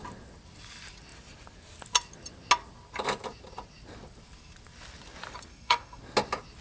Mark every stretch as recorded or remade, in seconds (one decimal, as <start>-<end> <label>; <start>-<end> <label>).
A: 0.0-5.5 recorded; 5.5-6.0 remade; 6.0-6.6 recorded